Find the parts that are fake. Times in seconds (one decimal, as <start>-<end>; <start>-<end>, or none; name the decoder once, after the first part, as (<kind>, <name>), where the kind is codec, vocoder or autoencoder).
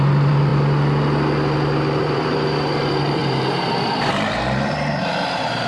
0.0-0.5 (vocoder, BigVGAN v2); 2.0-5.7